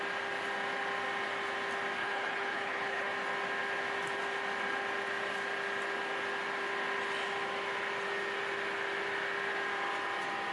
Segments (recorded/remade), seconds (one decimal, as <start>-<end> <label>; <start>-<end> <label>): 0.0-2.0 recorded; 2.0-3.1 remade; 3.1-10.5 recorded